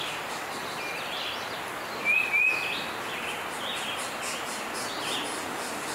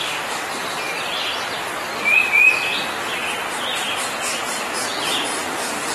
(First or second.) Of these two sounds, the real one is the first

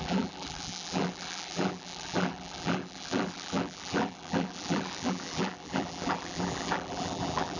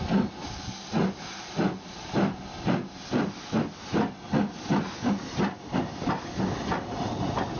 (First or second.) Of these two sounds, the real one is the second